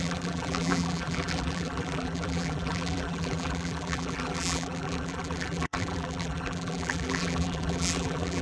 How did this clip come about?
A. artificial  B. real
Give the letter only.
A